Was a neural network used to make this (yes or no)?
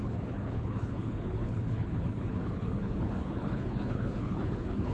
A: yes